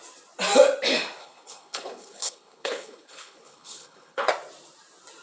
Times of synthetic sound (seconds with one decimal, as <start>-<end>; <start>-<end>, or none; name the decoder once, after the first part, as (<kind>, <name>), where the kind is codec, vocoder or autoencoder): 1.2-4.3 (codec, HILCodec)